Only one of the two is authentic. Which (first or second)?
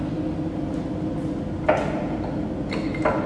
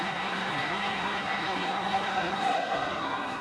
first